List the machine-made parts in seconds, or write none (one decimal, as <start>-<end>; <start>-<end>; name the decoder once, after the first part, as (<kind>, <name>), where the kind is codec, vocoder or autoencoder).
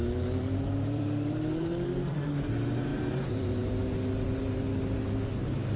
0.0-5.8 (vocoder, BigVGAN v2)